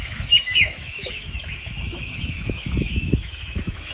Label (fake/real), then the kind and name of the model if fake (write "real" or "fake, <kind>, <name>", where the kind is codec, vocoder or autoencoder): fake, autoencoder, DAC-VAE